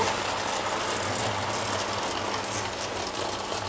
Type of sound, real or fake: real